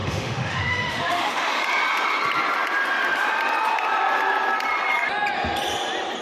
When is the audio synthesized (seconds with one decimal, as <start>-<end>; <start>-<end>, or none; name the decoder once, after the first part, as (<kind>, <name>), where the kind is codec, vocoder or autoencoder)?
0.0-1.6 (autoencoder, DAC-VAE)